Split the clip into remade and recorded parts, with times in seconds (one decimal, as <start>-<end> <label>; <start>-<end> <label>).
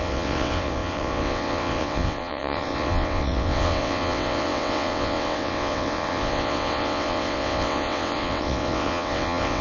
0.0-9.6 remade